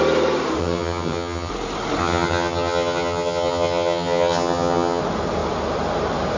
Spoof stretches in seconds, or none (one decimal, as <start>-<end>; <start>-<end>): 0.6-1.5; 2.0-5.0